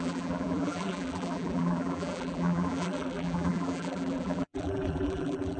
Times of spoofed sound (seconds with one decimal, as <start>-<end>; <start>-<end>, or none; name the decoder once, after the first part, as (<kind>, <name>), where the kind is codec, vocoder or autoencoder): 0.0-5.6 (vocoder, BigVGAN v2)